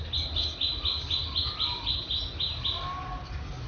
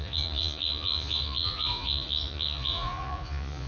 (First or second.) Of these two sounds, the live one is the first